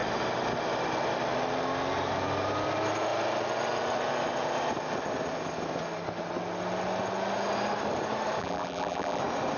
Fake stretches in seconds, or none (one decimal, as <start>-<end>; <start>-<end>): 8.4-9.2